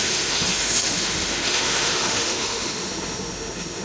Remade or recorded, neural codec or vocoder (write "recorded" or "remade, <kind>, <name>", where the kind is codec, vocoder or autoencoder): remade, autoencoder, DAC-VAE